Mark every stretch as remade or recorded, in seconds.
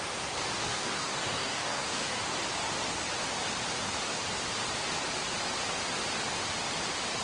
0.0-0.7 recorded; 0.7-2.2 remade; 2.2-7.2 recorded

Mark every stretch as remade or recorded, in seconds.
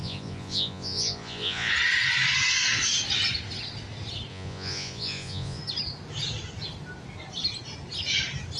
0.0-1.7 remade; 1.7-4.3 recorded; 4.3-5.6 remade; 5.6-8.6 recorded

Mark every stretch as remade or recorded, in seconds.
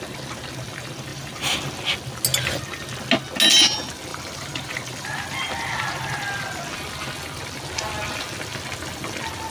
0.0-1.1 recorded; 1.1-1.7 remade; 1.7-4.1 recorded; 4.1-5.5 remade; 5.5-9.5 recorded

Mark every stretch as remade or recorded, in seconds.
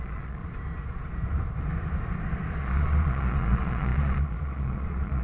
0.0-0.4 remade; 0.4-2.6 recorded; 2.6-5.2 remade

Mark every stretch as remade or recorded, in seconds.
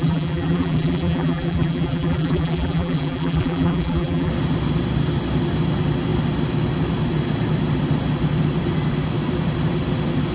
0.0-4.3 remade; 4.3-10.3 recorded